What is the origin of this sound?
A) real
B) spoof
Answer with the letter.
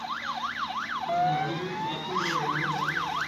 A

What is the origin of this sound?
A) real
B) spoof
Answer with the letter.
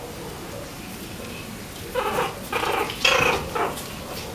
A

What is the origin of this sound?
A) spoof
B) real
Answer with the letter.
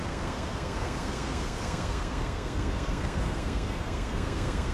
A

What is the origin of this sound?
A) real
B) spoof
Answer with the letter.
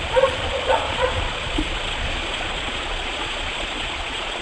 B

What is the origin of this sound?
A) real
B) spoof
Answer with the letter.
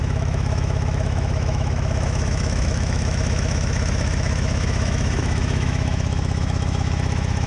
B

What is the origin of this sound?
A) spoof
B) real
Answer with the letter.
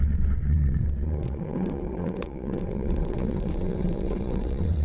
A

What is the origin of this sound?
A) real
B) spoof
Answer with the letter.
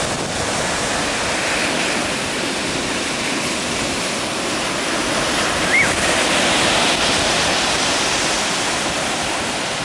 A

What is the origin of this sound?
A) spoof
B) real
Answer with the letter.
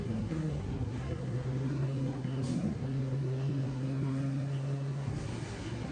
A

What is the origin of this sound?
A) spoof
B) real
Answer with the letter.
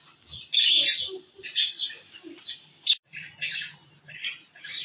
B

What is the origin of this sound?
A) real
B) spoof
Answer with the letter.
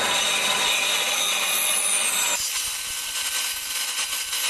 A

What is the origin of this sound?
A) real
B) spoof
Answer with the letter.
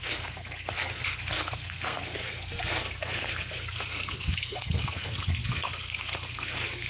B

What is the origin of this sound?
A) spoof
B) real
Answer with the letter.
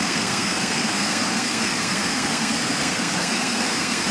A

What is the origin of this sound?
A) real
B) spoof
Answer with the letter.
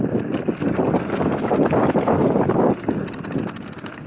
A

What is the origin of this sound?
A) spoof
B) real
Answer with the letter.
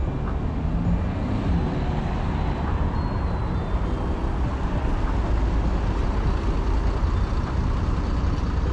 B